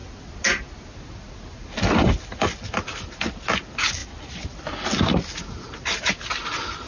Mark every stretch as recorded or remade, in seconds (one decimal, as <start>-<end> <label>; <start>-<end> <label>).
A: 0.0-6.9 recorded

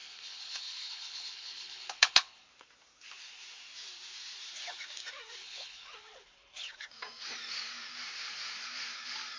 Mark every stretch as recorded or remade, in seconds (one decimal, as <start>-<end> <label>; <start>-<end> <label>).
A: 0.0-2.5 remade; 2.5-5.4 recorded; 5.4-6.7 remade; 6.7-9.4 recorded

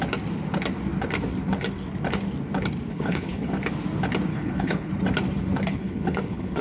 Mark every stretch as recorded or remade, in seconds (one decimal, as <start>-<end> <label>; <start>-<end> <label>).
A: 0.0-2.9 recorded; 2.9-3.5 remade; 3.5-4.3 recorded; 4.3-4.9 remade; 4.9-5.7 recorded; 5.7-6.6 remade

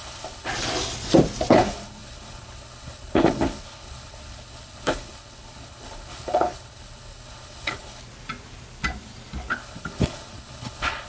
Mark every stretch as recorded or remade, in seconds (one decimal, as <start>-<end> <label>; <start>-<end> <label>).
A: 0.0-0.5 remade; 0.5-1.5 recorded; 1.5-8.0 remade; 8.0-9.5 recorded; 9.5-11.1 remade

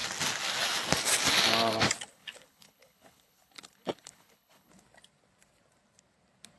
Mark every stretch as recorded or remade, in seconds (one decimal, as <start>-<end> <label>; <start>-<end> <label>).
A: 0.0-2.1 recorded; 2.1-4.7 remade; 4.7-6.6 recorded

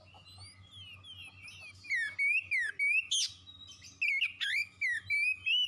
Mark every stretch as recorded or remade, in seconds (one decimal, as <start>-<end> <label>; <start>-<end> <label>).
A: 0.0-5.7 recorded

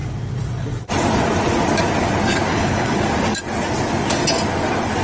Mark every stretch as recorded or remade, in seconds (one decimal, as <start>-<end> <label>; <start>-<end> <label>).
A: 0.0-2.5 recorded; 2.5-3.0 remade; 3.0-5.0 recorded